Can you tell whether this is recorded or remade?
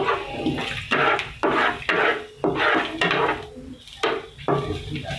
recorded